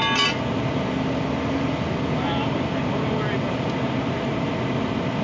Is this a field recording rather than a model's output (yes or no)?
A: yes